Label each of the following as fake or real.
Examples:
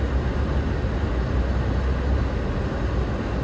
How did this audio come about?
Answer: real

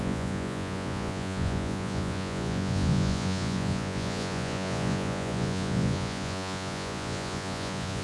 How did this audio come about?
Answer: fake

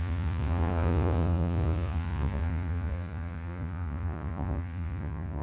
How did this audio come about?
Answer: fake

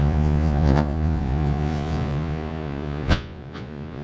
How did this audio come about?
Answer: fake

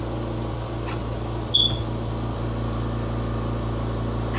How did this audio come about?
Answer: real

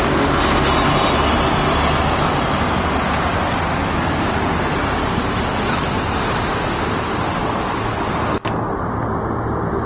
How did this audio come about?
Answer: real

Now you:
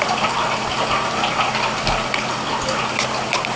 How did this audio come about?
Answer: real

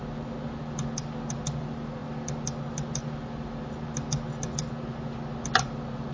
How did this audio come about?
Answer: real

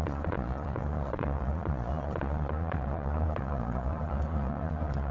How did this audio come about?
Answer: fake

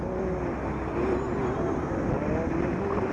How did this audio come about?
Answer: real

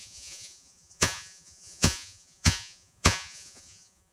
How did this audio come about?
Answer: fake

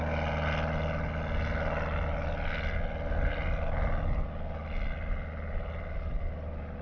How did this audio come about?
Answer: real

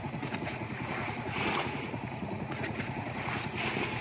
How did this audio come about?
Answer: fake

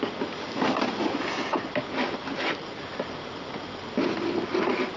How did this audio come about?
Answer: real